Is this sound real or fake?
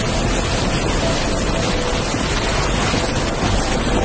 real